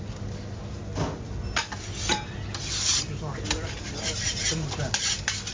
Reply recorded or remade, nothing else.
recorded